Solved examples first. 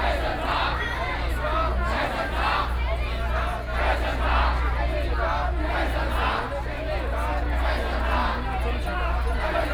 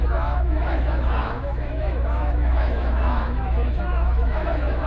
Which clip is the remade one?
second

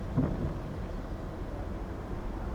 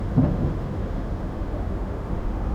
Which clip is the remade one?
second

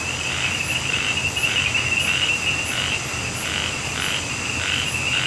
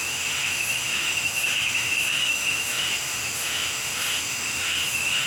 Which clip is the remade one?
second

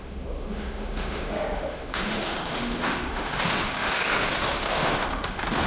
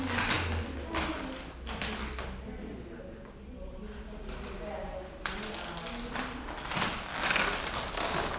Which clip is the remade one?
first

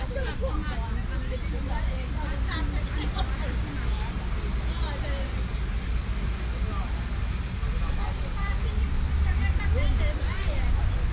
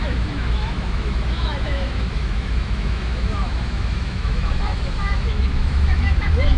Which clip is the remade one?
second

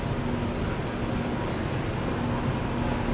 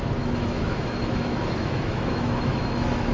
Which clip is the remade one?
second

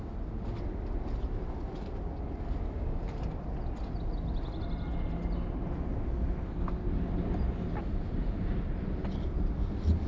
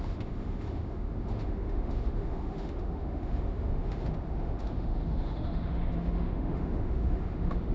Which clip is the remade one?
second